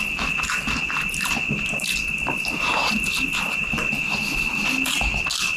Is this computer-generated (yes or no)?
no